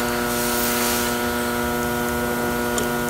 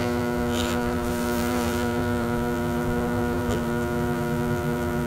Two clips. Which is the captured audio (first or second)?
first